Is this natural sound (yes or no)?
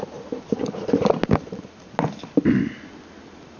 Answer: yes